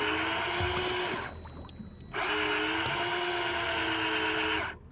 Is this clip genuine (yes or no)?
yes